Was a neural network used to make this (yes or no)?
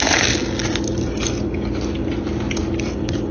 no